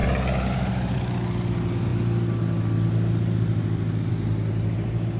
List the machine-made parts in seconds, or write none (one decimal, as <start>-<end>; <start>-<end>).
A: none